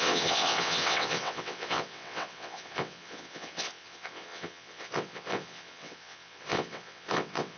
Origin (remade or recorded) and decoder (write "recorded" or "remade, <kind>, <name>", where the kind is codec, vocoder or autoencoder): remade, vocoder, WaveNeXt